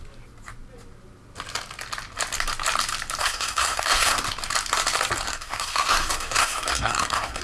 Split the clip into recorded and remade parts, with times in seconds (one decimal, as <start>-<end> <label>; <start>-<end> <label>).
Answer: 0.0-3.2 recorded; 3.2-4.2 remade; 4.2-5.3 recorded; 5.3-7.4 remade